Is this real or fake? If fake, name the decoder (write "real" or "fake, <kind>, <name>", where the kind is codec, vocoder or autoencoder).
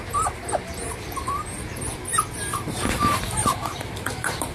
fake, vocoder, BigVGAN v2